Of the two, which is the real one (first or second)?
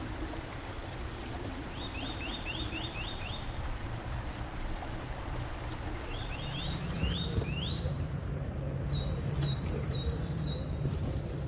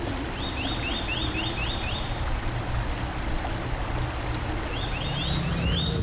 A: second